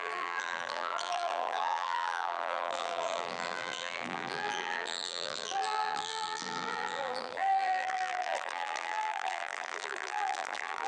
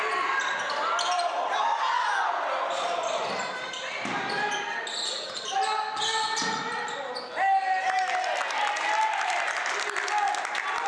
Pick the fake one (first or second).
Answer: first